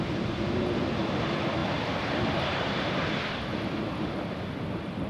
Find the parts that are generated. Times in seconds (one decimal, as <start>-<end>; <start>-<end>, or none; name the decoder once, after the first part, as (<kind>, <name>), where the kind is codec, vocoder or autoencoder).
none